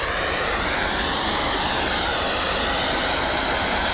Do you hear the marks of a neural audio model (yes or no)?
no